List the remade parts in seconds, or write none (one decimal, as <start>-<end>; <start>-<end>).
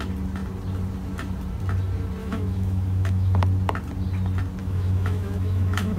2.2-3.4; 4.6-6.0